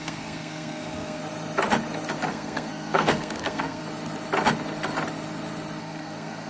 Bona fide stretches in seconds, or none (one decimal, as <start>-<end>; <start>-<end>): 1.2-2.3; 3.8-5.8